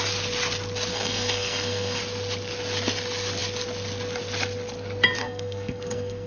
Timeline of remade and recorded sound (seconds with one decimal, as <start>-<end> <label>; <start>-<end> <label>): 0.0-0.9 recorded; 0.9-2.0 remade; 2.0-5.2 recorded; 5.2-6.3 remade